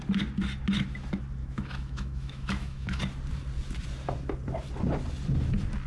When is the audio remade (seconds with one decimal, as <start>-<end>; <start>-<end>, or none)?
1.4-3.0

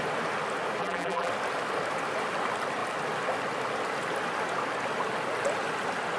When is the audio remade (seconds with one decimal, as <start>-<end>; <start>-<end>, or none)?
0.8-1.3

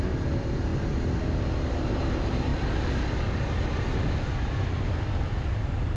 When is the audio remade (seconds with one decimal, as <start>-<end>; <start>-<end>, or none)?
0.0-0.7; 1.7-2.5; 5.1-6.0